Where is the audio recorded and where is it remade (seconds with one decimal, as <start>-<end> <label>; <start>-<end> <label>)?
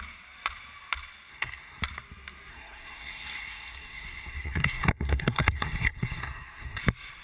0.0-1.3 recorded; 1.3-1.8 remade; 1.8-2.5 recorded; 2.5-6.8 remade; 6.8-7.2 recorded